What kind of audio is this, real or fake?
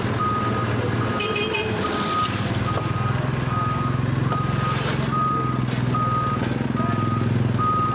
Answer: real